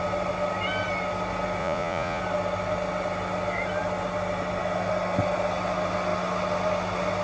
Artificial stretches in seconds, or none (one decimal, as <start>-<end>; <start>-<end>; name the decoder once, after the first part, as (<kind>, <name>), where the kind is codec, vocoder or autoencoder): 1.6-2.2 (vocoder, Vocos)